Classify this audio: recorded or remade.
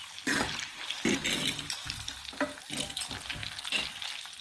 recorded